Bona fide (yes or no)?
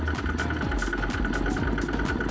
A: yes